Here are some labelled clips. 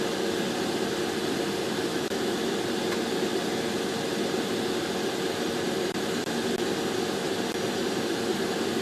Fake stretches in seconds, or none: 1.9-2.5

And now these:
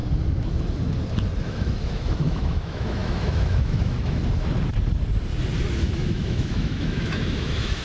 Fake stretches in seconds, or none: 1.4-4.2; 5.9-7.8

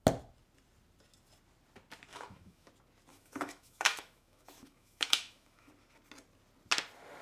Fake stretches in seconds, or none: 2.1-2.7; 3.1-5.7

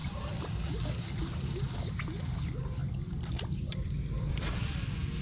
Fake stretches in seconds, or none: none